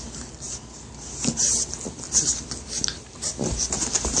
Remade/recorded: recorded